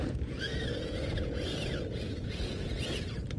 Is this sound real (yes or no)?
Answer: no